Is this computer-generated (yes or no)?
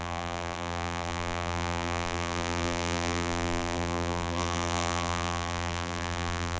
yes